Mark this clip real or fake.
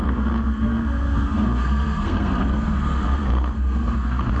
fake